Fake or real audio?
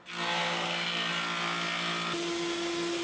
real